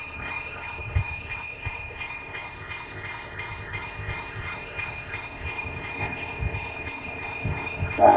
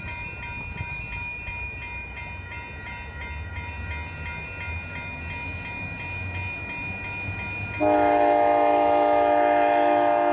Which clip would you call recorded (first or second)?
second